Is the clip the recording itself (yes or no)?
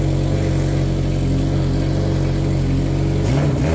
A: yes